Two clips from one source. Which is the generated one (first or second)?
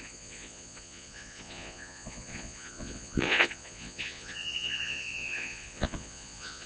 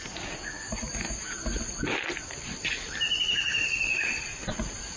first